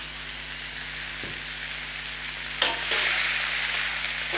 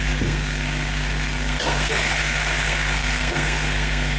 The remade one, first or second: second